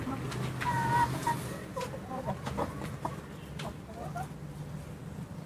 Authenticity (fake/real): real